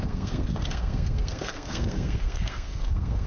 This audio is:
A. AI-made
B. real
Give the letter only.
A